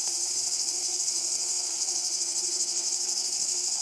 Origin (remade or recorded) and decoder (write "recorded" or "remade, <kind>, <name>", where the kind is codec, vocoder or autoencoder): remade, codec, SNAC